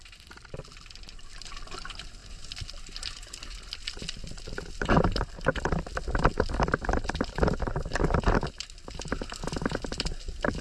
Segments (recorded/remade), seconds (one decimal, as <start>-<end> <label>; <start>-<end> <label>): 0.0-10.6 recorded